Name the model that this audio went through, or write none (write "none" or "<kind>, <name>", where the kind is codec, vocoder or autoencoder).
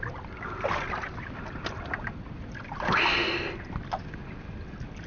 none